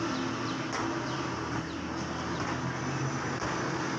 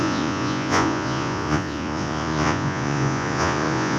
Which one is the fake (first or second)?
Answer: second